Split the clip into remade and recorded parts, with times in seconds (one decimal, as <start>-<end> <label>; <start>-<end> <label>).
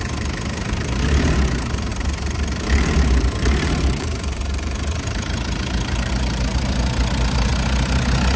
0.0-7.5 remade; 7.5-8.4 recorded